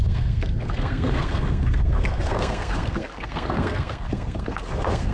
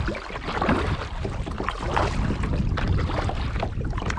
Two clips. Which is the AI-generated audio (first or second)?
first